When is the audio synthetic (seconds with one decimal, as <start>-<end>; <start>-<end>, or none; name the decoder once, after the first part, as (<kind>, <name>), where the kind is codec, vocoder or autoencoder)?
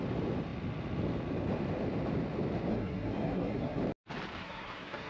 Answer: 2.7-3.8 (codec, SNAC); 4.4-5.1